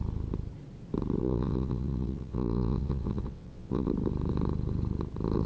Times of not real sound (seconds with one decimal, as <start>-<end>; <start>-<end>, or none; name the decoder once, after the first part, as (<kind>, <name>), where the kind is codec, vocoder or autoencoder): 1.2-3.9 (vocoder, WaveNeXt)